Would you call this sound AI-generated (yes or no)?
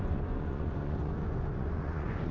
yes